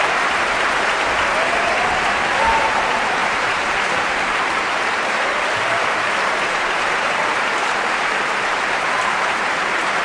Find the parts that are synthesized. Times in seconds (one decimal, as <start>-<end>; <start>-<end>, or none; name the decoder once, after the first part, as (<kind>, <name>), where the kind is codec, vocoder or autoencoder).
0.0-10.0 (vocoder, BigVGAN v2)